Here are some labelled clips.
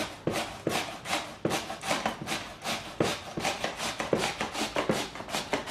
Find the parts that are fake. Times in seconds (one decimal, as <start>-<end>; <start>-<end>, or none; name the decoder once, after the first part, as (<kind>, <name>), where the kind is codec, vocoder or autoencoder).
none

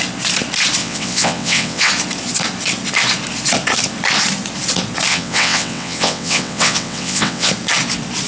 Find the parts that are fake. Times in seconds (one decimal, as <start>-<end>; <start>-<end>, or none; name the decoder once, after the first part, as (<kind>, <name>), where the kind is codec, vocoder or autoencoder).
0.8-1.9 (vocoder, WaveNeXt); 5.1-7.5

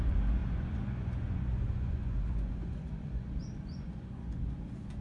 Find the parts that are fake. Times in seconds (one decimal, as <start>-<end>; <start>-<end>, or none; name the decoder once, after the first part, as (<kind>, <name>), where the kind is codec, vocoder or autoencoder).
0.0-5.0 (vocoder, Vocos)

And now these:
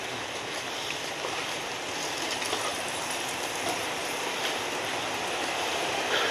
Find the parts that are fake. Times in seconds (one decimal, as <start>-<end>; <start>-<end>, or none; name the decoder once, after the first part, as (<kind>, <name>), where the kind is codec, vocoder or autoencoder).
2.7-4.7 (vocoder, BigVGAN v2)